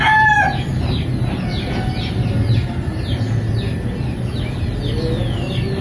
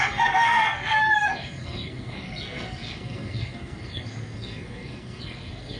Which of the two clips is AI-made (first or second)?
second